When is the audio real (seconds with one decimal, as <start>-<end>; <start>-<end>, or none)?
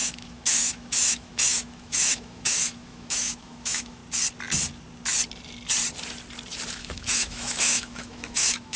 4.0-6.7